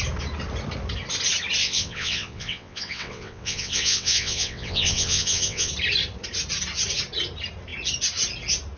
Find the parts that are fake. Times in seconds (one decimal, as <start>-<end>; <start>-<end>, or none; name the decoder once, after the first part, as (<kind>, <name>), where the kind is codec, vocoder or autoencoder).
1.6-5.7 (vocoder, WaveNeXt)